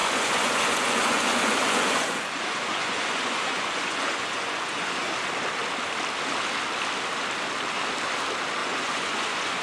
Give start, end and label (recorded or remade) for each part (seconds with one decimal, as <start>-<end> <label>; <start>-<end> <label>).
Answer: 0.0-5.1 remade; 5.1-8.6 recorded; 8.6-9.6 remade